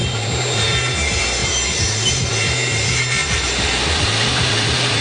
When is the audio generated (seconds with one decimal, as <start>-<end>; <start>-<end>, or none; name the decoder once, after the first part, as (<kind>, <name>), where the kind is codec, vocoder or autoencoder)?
1.4-2.3 (vocoder, BigVGAN v2); 3.2-4.1